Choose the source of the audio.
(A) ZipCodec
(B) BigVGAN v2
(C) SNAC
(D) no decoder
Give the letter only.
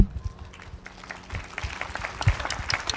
D